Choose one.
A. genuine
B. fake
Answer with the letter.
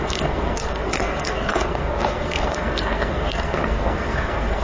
B